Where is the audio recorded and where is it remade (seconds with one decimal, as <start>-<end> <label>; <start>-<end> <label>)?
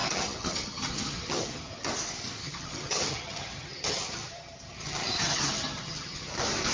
0.0-1.9 remade; 1.9-2.4 recorded; 2.4-6.3 remade; 6.3-6.7 recorded